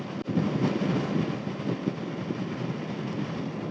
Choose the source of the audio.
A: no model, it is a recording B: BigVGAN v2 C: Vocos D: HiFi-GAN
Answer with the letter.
A